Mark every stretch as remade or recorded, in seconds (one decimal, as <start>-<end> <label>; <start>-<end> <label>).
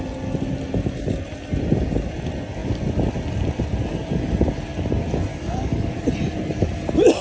0.0-5.3 recorded; 5.3-5.9 remade; 5.9-7.2 recorded